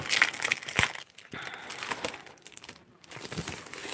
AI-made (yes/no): yes